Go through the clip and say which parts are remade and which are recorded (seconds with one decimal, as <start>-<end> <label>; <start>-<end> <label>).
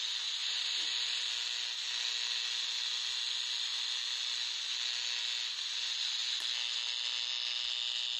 0.0-0.4 recorded; 0.4-1.3 remade; 1.3-8.2 recorded